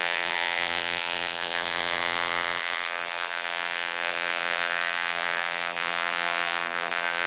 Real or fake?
fake